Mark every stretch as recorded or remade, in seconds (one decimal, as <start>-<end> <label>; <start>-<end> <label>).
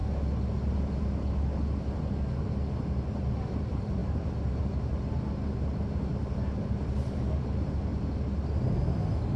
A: 0.0-3.2 recorded; 3.2-7.9 remade; 7.9-9.4 recorded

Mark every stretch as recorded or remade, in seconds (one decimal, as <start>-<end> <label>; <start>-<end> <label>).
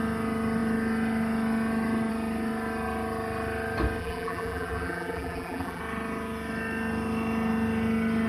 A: 0.0-4.0 recorded; 4.0-5.8 remade; 5.8-8.3 recorded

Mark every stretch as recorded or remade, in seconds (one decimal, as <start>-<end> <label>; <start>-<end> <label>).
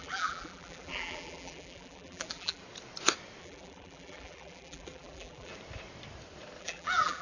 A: 0.0-2.6 remade; 2.6-3.4 recorded; 3.4-5.5 remade; 5.5-6.6 recorded; 6.6-7.2 remade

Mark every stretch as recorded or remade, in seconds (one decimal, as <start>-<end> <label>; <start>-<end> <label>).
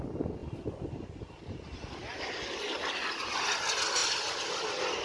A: 0.0-0.4 recorded; 0.4-2.3 remade; 2.3-4.0 recorded; 4.0-4.6 remade; 4.6-5.0 recorded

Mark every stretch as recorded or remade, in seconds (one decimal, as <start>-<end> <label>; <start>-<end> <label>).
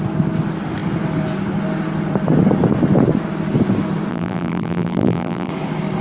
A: 0.0-4.1 recorded; 4.1-5.5 remade; 5.5-6.0 recorded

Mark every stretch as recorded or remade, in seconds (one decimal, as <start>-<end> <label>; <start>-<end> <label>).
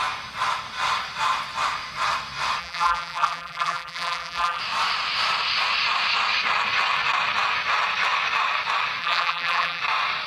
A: 0.0-2.6 recorded; 2.6-4.6 remade; 4.6-9.0 recorded; 9.0-9.8 remade; 9.8-10.3 recorded